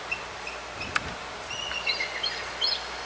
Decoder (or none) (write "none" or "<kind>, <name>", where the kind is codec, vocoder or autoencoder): none